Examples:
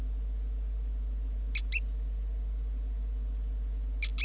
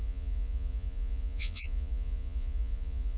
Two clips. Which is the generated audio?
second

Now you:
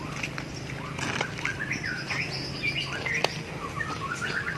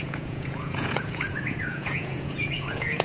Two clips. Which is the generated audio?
second